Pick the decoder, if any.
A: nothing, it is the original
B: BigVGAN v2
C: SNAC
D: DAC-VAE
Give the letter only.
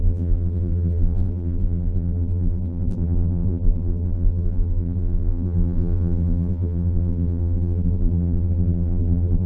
B